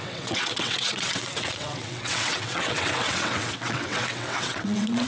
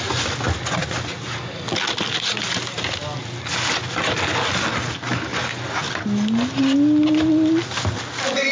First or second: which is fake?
first